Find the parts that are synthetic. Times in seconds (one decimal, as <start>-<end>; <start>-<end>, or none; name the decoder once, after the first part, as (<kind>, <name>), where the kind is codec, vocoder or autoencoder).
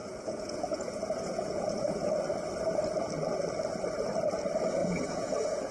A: 0.0-2.1 (vocoder, Vocos); 4.8-5.7